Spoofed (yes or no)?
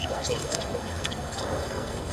yes